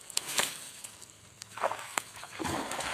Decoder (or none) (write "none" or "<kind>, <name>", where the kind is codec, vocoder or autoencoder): codec, SNAC